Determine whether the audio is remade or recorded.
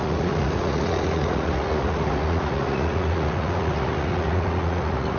remade